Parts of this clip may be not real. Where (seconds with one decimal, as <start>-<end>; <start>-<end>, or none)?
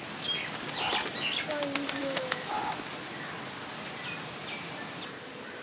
2.0-2.6